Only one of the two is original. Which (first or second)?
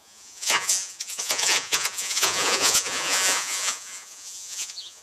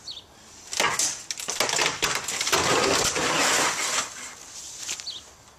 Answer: second